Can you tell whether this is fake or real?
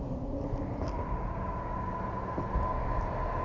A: real